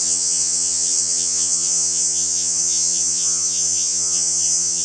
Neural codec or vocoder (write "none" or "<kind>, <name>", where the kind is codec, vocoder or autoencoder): vocoder, HiFi-GAN